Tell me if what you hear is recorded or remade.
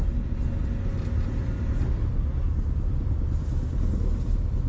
recorded